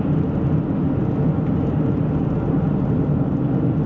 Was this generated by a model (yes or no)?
no